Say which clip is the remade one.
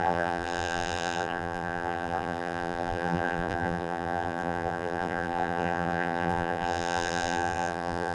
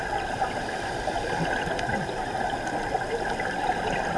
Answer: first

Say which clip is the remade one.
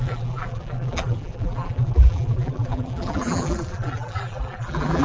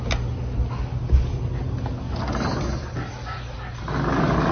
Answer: first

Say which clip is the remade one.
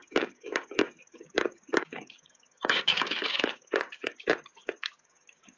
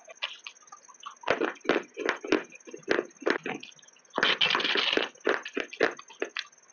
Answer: first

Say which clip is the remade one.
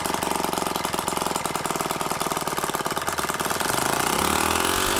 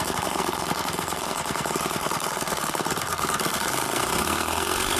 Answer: second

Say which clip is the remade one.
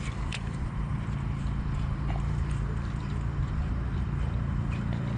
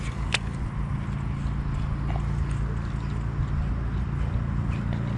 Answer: first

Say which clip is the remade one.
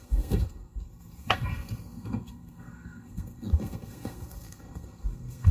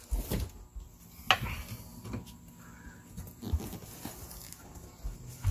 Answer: first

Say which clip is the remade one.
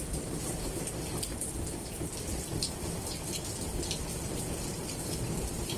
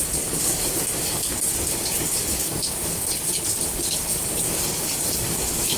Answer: second